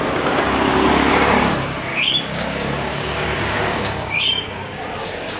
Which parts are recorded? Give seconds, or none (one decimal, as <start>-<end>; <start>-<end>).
1.5-1.9